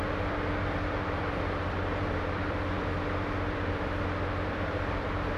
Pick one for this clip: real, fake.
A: fake